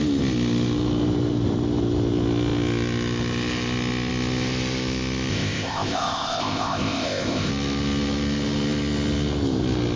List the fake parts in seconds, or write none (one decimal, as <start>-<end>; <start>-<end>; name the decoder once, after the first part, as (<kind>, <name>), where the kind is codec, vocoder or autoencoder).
5.3-7.5 (codec, ZipCodec)